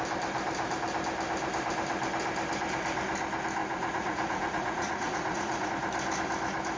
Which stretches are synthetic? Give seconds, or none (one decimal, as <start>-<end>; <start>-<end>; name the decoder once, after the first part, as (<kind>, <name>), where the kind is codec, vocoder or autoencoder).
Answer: 3.6-5.7 (vocoder, Vocos)